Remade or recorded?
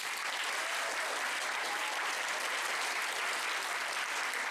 recorded